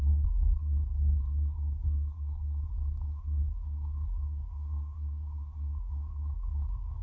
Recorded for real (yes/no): no